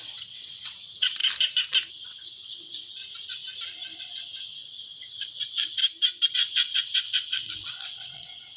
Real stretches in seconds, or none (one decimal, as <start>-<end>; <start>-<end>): 1.2-1.9; 3.0-4.0; 5.8-6.3